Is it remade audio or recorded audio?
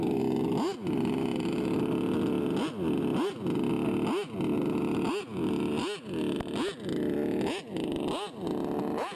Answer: recorded